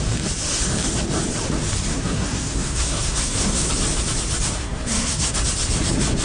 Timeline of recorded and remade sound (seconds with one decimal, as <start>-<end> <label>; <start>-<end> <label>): 0.0-1.9 recorded; 1.9-3.7 remade; 3.7-4.6 recorded; 4.6-5.4 remade; 5.4-6.2 recorded